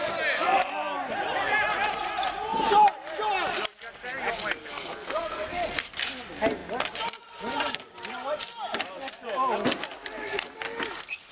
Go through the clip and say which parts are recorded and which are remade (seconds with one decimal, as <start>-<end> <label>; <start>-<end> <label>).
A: 0.0-4.6 recorded; 4.6-5.5 remade; 5.5-11.3 recorded